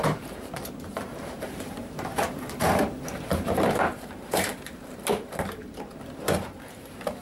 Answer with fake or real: fake